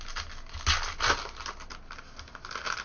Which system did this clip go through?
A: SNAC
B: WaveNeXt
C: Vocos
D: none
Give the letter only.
D